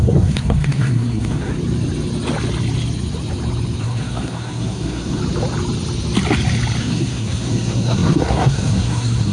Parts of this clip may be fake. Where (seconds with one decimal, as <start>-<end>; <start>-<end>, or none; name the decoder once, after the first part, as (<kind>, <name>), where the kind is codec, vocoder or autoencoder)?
0.0-1.5 (codec, SNAC); 3.8-5.2; 6.8-9.3